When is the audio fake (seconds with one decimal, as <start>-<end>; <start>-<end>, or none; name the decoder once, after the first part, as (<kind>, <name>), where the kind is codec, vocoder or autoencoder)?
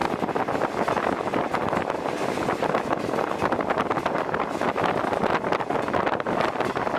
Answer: none